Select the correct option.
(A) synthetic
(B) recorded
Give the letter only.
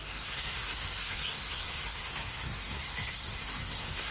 A